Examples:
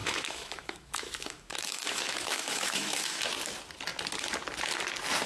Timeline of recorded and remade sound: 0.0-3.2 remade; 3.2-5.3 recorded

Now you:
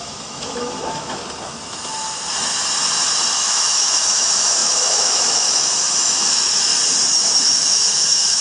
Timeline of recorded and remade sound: 0.0-1.2 remade; 1.2-3.3 recorded; 3.3-6.7 remade; 6.7-7.4 recorded; 7.4-8.4 remade

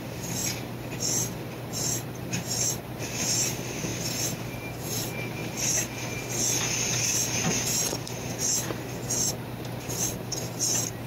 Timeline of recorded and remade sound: 0.0-0.4 remade; 0.4-1.7 recorded; 1.7-3.9 remade; 3.9-4.5 recorded; 4.5-5.4 remade; 5.4-9.3 recorded; 9.3-11.1 remade